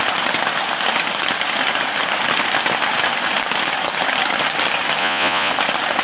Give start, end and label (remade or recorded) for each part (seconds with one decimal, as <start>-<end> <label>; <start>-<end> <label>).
0.0-5.0 recorded; 5.0-5.5 remade; 5.5-6.0 recorded